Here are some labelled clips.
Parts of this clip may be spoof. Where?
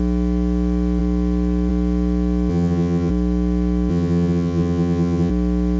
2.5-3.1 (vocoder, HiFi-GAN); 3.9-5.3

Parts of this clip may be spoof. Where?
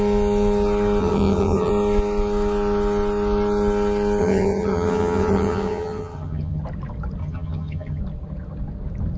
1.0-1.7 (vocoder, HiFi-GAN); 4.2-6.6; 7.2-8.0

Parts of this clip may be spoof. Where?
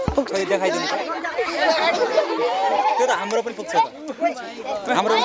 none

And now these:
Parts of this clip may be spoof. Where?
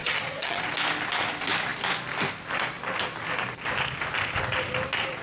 0.0-0.6 (vocoder, HiFi-GAN)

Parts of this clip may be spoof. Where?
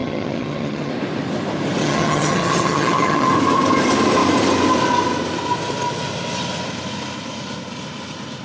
0.0-0.9 (vocoder, HiFi-GAN); 1.8-3.3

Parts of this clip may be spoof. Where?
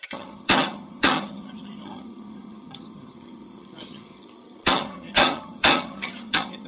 0.0-6.7 (vocoder, HiFi-GAN)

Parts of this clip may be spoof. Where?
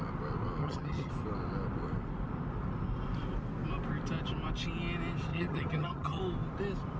0.6-1.1 (vocoder, HiFi-GAN); 5.3-6.2